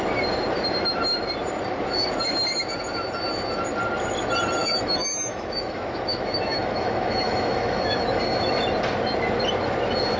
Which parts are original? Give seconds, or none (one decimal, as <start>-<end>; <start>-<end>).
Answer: 0.0-4.6; 8.2-10.2